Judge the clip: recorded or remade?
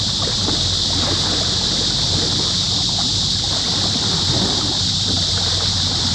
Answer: recorded